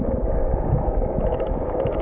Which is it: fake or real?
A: fake